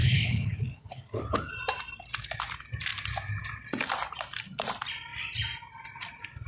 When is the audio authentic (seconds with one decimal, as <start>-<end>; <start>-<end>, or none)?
1.4-6.5